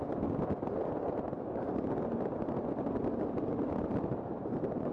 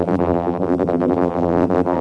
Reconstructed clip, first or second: second